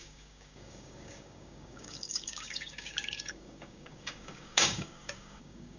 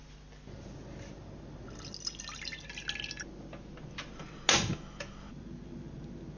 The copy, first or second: first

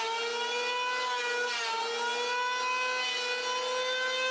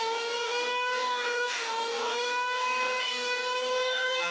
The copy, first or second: second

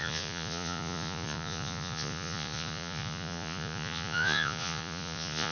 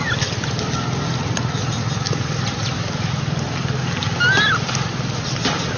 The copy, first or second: first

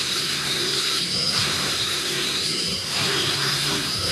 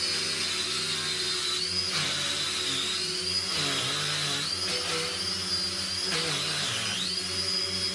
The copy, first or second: first